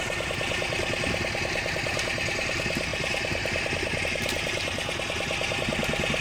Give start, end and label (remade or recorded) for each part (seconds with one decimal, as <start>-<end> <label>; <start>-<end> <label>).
0.0-2.9 recorded; 2.9-4.0 remade; 4.0-6.2 recorded